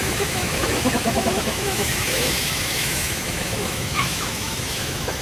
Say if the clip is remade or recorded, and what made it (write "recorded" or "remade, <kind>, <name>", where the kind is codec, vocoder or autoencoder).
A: remade, autoencoder, DAC-VAE